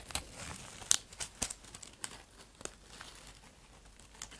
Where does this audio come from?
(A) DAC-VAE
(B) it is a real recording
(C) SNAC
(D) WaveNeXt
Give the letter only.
B